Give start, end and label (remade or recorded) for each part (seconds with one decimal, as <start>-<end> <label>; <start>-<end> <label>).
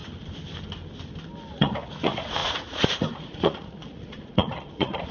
0.0-1.5 recorded; 1.5-5.1 remade